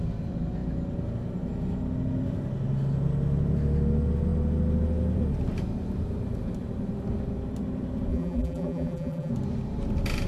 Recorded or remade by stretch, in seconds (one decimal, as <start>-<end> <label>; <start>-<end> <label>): 0.0-8.1 recorded; 8.1-9.3 remade; 9.3-10.3 recorded